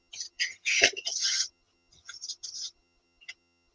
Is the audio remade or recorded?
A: remade